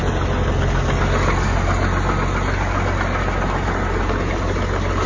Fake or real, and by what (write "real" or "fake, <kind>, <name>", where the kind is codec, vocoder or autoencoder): real